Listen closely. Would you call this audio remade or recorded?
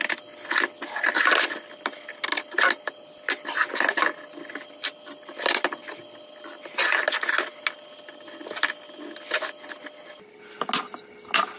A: recorded